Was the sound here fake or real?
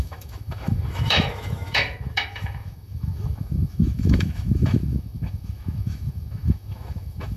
fake